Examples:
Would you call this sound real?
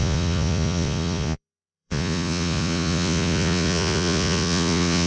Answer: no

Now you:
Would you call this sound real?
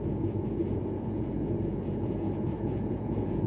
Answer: no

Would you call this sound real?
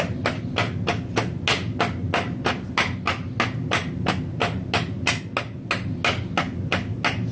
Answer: yes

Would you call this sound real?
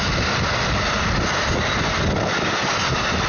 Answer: yes